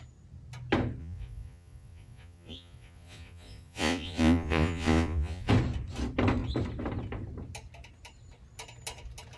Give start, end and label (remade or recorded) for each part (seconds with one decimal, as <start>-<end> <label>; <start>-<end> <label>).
0.0-1.0 recorded; 1.0-5.5 remade; 5.5-9.4 recorded